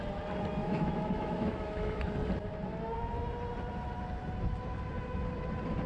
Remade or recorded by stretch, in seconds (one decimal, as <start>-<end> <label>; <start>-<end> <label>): 0.0-0.6 recorded; 0.6-2.0 remade; 2.0-5.9 recorded